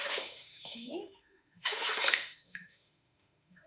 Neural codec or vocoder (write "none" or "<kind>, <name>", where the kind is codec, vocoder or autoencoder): autoencoder, DAC-VAE